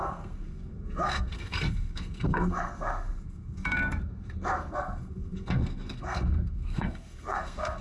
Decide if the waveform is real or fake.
fake